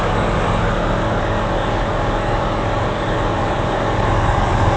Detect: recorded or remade remade